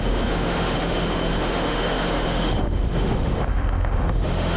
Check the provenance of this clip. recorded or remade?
remade